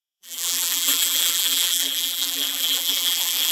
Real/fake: fake